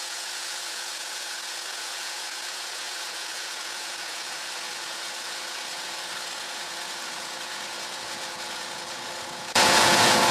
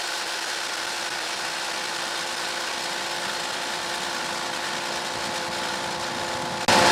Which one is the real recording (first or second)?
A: second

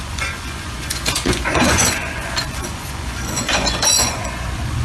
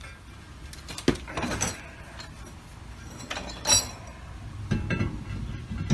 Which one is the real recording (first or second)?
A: second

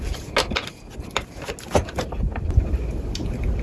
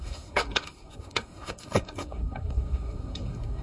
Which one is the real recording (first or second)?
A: first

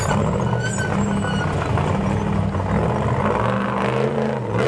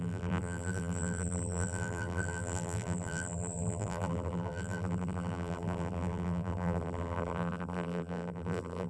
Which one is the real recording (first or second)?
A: first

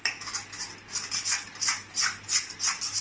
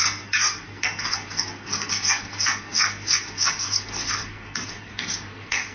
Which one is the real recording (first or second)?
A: first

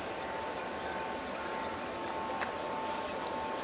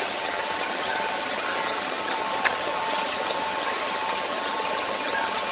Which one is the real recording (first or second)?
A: first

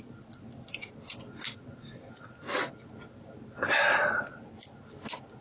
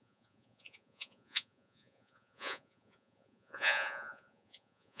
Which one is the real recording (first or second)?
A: first